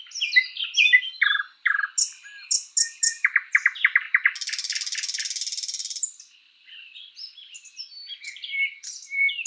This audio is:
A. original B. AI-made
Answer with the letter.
A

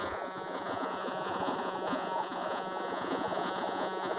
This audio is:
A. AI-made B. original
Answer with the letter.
A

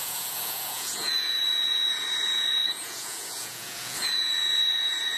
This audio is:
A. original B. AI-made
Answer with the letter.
B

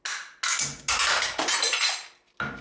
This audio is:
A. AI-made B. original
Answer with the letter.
B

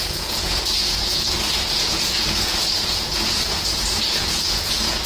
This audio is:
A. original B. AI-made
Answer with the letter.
B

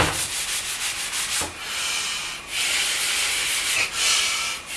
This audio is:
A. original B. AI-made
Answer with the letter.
A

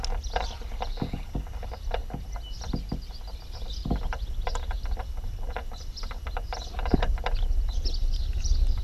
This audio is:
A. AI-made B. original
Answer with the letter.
B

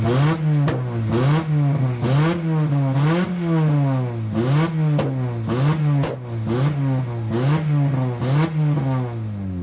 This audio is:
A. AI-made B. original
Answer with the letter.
B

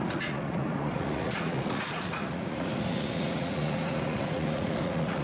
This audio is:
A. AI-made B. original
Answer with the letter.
A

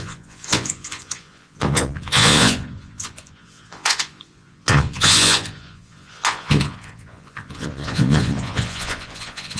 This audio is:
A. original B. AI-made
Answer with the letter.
B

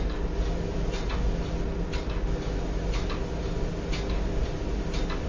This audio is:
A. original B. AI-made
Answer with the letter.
A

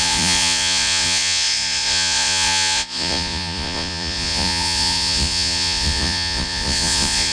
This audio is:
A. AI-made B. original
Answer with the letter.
A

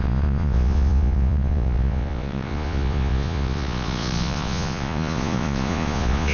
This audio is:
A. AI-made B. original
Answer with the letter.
A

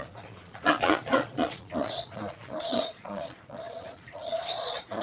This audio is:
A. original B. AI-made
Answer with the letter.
B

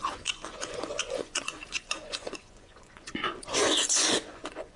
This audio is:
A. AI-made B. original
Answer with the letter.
A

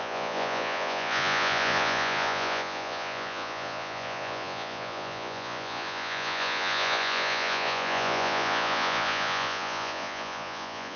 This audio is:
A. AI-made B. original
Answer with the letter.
A